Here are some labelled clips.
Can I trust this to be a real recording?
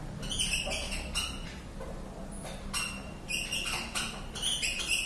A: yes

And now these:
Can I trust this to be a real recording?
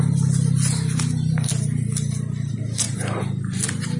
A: yes